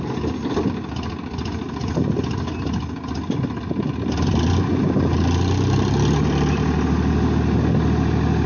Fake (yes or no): no